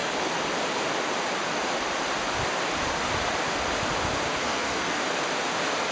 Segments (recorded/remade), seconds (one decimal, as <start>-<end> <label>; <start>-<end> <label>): 0.0-4.4 recorded; 4.4-5.0 remade; 5.0-5.9 recorded